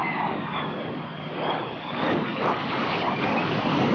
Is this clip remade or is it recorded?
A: remade